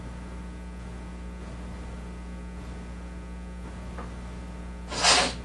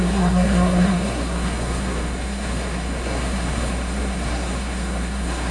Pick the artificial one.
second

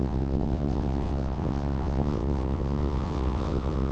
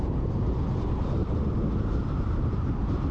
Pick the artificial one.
first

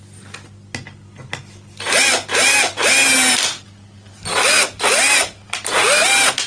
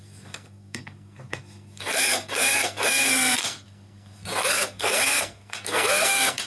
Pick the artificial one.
second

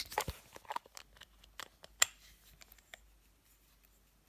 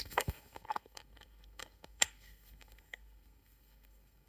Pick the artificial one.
second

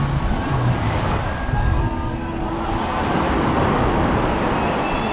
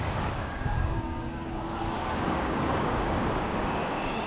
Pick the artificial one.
second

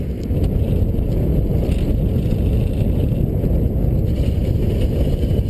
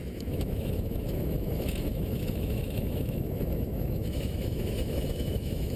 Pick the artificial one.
second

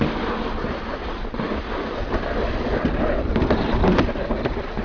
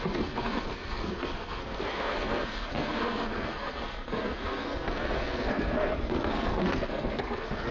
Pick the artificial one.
second